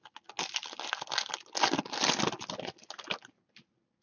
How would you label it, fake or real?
real